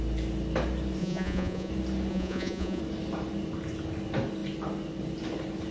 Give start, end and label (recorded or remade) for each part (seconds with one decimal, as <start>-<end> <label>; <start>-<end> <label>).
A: 0.0-1.0 recorded; 1.0-1.7 remade; 1.7-2.1 recorded; 2.1-2.8 remade; 2.8-5.7 recorded